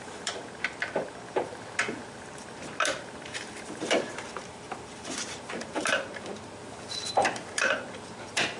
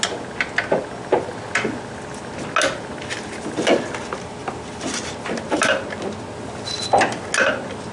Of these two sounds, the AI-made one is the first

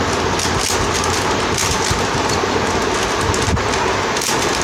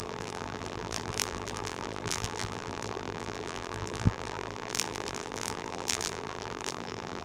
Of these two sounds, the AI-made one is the second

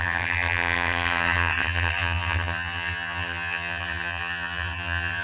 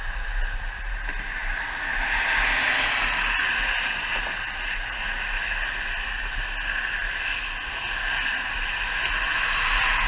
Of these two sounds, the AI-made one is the first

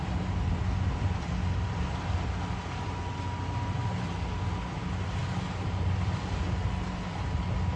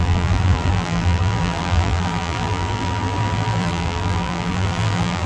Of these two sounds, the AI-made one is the second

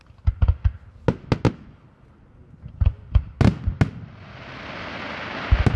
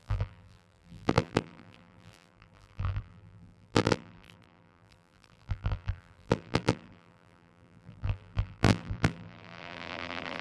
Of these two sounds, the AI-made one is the second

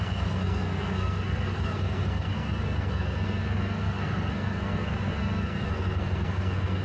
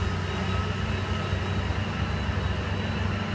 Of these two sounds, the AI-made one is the first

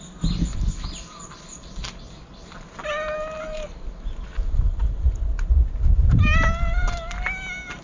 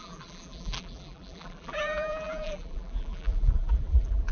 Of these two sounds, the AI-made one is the second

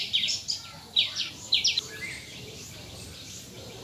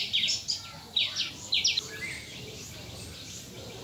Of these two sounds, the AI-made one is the first